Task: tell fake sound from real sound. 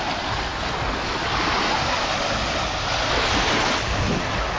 real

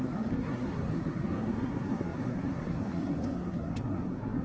fake